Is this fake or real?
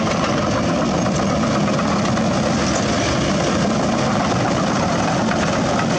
real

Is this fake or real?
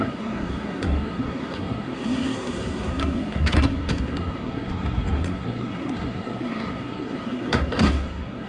fake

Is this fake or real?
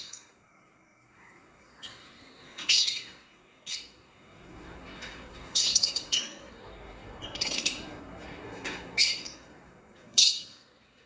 fake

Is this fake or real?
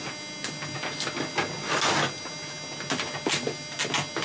real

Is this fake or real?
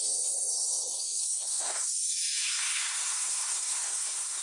fake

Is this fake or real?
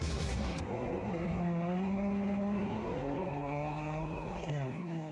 fake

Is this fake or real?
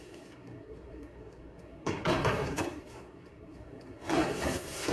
fake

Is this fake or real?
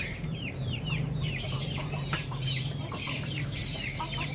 fake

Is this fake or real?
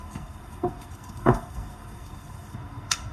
fake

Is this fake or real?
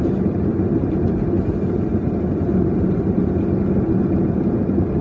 real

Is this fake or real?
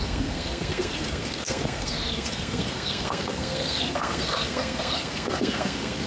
fake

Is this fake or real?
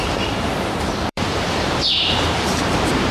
fake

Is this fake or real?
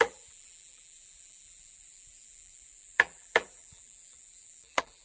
fake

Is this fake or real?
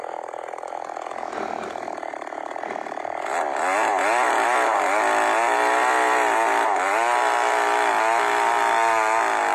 real